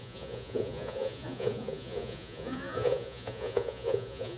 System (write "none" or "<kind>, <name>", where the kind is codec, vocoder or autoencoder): vocoder, Vocos